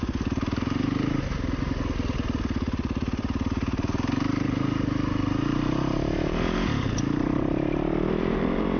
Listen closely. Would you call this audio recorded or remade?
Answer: remade